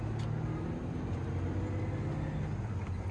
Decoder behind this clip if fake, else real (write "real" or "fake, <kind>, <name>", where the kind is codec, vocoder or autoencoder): real